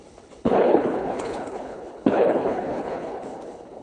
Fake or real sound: fake